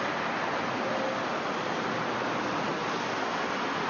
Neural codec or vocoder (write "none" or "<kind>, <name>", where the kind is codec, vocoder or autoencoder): none